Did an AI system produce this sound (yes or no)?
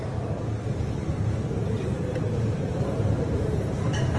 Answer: yes